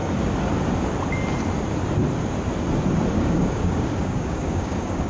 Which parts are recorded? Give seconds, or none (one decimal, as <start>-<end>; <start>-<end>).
0.0-3.1